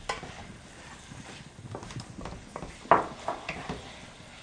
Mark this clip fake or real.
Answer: real